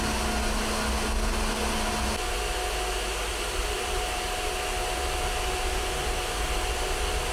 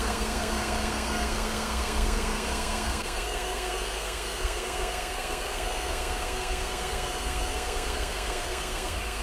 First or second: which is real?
first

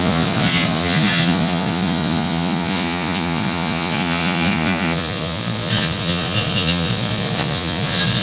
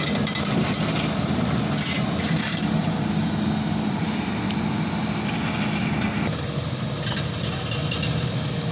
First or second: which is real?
second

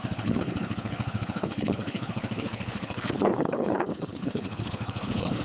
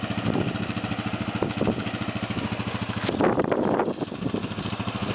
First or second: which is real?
second